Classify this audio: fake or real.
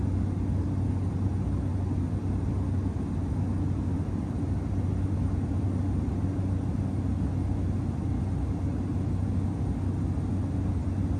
real